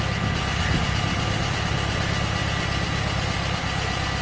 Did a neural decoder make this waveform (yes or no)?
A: no